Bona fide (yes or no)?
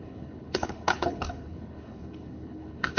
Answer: no